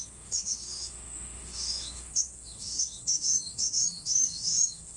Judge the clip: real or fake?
fake